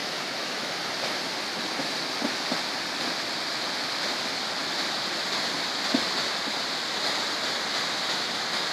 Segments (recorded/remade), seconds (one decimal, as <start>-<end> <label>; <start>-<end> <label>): 0.0-0.7 remade; 0.7-8.7 recorded